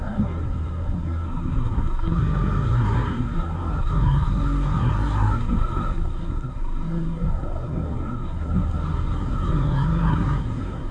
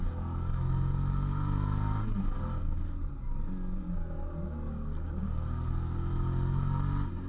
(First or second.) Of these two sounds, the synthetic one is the first